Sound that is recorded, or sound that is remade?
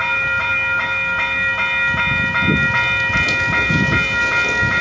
recorded